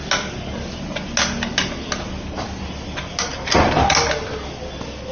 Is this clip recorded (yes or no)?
yes